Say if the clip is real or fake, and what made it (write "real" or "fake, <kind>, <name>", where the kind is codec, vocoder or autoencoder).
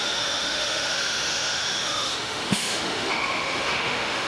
fake, autoencoder, DAC-VAE